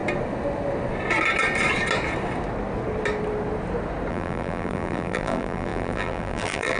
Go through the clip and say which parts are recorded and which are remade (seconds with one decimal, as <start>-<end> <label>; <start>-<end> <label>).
0.0-4.1 recorded; 4.1-6.8 remade